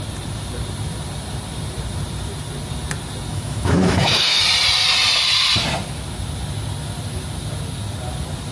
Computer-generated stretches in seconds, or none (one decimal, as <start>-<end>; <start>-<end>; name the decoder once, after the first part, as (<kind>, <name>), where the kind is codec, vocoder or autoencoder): 3.3-4.4 (autoencoder, DAC-VAE)